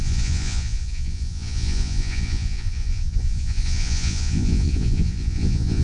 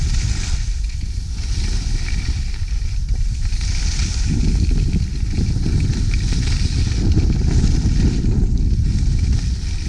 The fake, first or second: first